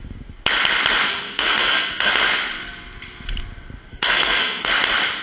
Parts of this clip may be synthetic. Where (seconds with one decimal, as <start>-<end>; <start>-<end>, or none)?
1.1-2.1; 3.9-4.7